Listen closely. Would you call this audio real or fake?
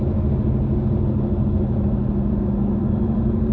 real